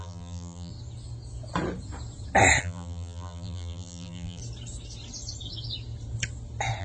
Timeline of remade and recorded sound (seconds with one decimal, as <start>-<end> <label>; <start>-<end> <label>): 0.0-0.7 remade; 0.7-2.6 recorded; 2.6-4.4 remade; 4.4-6.8 recorded